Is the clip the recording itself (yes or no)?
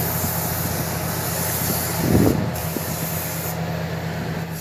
yes